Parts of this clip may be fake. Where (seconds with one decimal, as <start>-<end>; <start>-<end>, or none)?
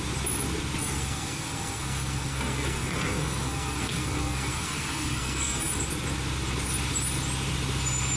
0.8-5.7